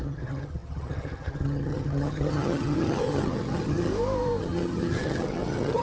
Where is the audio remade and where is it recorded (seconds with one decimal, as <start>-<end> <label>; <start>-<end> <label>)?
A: 0.0-3.9 remade; 3.9-4.4 recorded; 4.4-5.8 remade